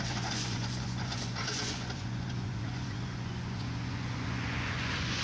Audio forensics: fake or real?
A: fake